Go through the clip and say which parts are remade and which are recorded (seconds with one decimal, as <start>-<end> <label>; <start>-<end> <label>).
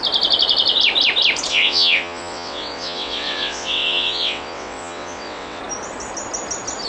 0.0-1.5 recorded; 1.5-5.6 remade; 5.6-6.9 recorded